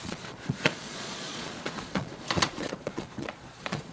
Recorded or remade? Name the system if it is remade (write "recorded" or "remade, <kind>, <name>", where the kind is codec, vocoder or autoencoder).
remade, vocoder, Vocos